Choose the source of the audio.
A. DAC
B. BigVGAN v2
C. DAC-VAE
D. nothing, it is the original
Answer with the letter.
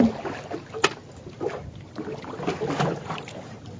D